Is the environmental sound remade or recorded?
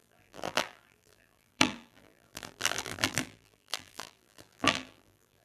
remade